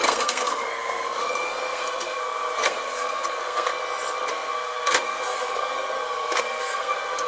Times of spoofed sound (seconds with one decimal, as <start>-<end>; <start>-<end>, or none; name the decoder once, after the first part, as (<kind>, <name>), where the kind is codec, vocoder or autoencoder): 0.0-3.7 (codec, SNAC); 4.3-7.3

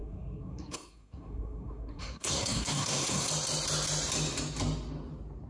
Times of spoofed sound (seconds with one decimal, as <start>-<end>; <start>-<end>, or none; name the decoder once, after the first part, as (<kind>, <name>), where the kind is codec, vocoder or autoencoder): 0.0-3.3 (codec, SNAC)

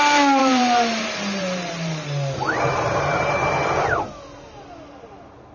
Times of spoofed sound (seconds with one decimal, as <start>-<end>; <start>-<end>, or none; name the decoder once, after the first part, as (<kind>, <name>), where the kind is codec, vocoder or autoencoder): 0.4-3.7 (vocoder, BigVGAN v2)

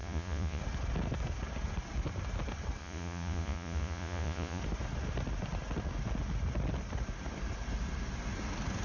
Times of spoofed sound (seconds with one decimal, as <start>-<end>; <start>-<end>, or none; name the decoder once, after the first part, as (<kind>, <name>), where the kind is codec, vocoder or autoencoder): 0.0-0.6 (vocoder, Vocos); 2.8-4.6

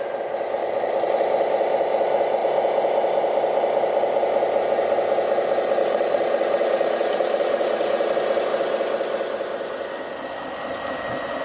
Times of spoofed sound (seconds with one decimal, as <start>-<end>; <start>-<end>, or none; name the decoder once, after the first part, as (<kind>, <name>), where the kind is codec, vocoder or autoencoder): 0.6-1.1 (vocoder, Vocos); 5.8-8.1

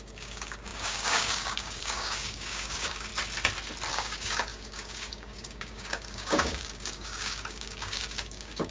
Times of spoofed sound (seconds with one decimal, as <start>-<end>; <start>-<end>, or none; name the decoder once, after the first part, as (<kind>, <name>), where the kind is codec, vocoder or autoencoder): 0.0-3.1 (codec, DAC); 3.9-8.7

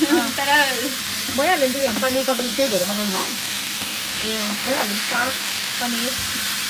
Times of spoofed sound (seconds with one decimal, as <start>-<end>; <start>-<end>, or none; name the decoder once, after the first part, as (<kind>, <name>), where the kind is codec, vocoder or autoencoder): 1.8-5.8 (codec, DAC)